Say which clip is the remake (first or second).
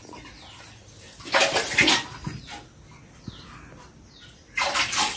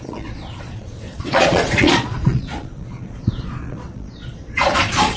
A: second